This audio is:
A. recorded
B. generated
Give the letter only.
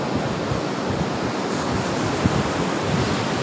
A